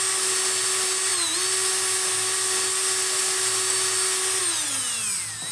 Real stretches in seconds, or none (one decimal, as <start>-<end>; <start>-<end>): 0.0-5.5